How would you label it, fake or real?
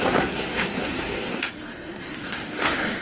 fake